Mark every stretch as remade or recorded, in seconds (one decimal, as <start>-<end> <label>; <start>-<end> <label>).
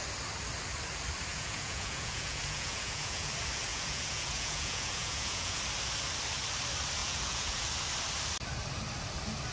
0.0-1.3 recorded; 1.3-3.3 remade; 3.3-3.7 recorded; 3.7-5.6 remade; 5.6-7.0 recorded; 7.0-7.6 remade; 7.6-9.5 recorded